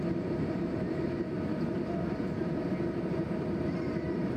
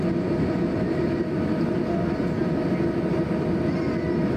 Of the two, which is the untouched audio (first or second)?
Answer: second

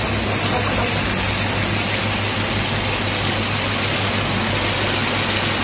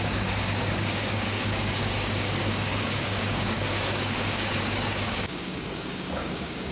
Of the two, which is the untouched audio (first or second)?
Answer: first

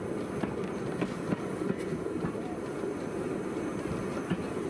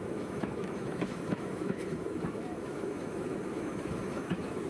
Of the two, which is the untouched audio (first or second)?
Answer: first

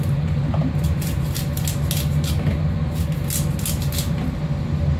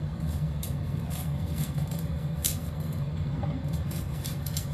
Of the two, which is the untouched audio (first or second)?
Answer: first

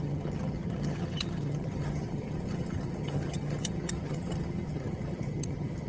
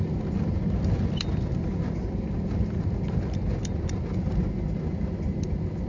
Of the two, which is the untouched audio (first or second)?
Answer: second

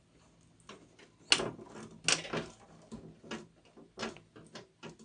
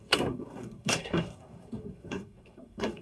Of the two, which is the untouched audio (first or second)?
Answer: first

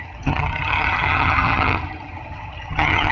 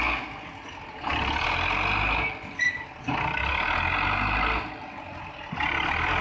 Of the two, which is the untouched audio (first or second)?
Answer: second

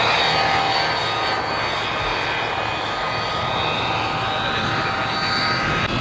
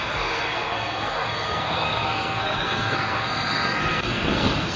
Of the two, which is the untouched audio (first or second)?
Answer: first